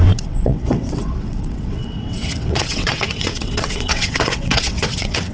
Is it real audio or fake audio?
fake